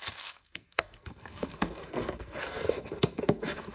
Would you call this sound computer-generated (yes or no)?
yes